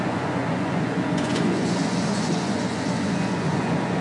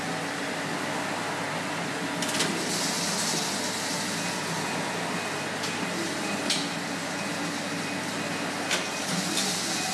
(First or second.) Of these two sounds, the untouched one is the second